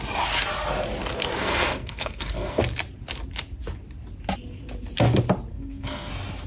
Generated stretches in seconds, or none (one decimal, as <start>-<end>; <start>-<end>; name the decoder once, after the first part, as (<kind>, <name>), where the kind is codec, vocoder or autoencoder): 1.4-2.6 (codec, SNAC); 5.5-6.1